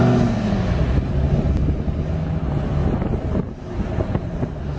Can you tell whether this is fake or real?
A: real